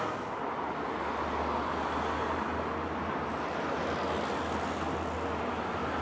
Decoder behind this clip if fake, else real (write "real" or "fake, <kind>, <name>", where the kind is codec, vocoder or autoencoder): real